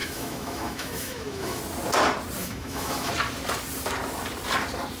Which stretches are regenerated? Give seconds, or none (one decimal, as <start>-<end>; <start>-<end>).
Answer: 0.0-1.6; 2.4-3.1